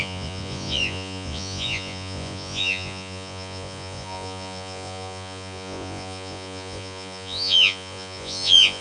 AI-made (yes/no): yes